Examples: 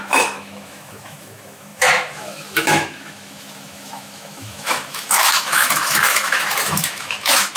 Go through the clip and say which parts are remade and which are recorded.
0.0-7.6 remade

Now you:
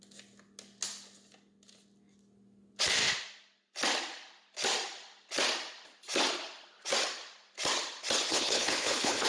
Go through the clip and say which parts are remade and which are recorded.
0.0-8.3 recorded; 8.3-9.3 remade